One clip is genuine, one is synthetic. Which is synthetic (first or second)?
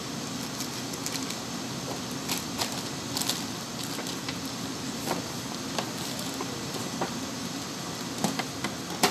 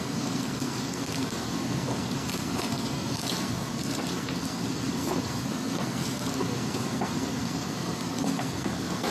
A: second